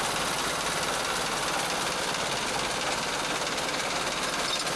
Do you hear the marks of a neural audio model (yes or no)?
no